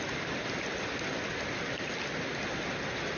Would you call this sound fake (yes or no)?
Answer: no